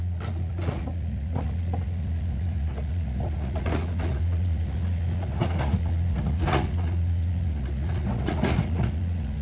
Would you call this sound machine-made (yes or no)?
yes